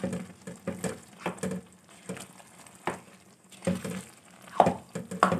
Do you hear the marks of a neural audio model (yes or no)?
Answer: no